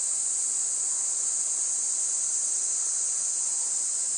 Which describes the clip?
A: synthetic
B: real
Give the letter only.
A